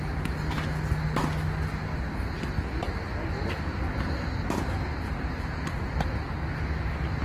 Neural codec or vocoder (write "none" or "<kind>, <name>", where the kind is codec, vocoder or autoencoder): none